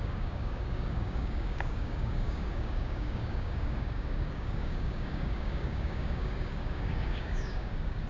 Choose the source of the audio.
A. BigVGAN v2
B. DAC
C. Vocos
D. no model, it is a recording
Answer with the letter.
B